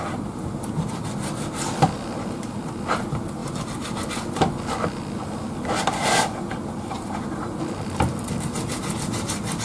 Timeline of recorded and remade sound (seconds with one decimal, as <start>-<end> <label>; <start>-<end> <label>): 0.0-9.6 recorded